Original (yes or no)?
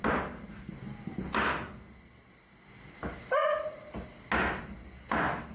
yes